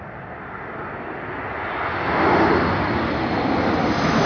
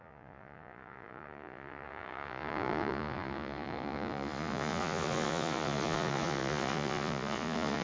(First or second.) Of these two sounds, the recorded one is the first